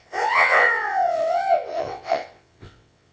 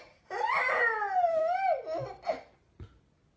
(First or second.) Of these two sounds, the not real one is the first